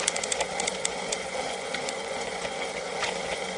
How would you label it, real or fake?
fake